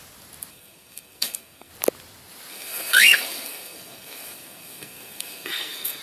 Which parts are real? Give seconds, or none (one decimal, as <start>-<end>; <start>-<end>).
0.0-0.5; 1.7-2.5